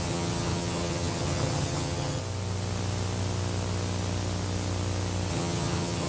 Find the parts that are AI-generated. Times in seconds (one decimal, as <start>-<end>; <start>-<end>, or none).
0.0-2.2; 5.3-6.1